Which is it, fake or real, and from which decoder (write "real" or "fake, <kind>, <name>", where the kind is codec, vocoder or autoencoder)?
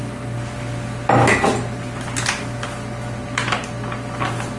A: real